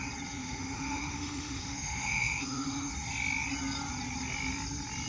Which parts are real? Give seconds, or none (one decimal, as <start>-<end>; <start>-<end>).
0.0-0.4; 2.9-5.1